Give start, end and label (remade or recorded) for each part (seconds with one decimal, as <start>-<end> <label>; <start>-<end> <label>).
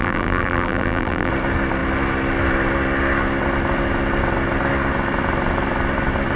0.0-1.3 remade; 1.3-6.4 recorded